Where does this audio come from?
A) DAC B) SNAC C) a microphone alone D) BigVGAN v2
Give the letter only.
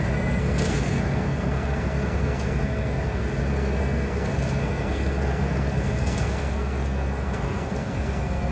B